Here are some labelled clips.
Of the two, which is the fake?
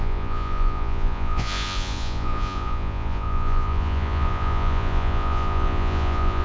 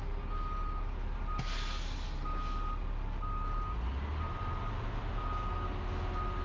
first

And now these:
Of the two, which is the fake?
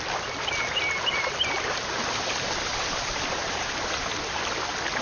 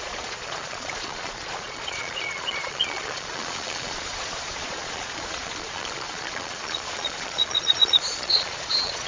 second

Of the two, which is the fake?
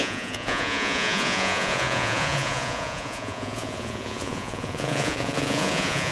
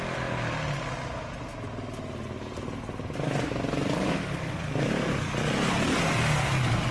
first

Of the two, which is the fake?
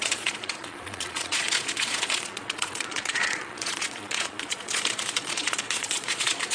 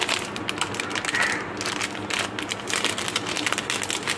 first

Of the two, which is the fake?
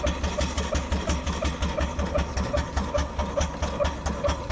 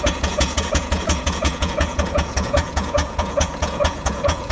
second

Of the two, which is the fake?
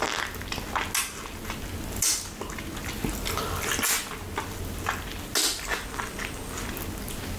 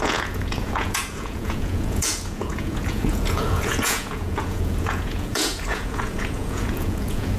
second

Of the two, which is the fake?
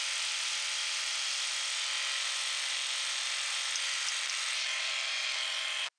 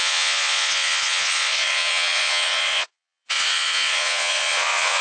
second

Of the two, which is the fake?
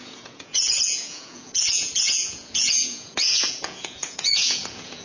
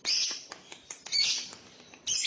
first